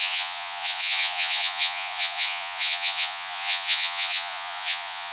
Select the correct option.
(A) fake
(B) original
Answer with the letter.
A